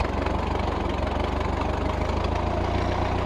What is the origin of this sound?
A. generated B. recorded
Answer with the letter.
B